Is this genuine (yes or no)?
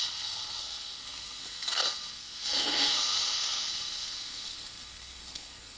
no